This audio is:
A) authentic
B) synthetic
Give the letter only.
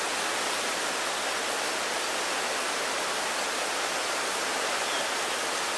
A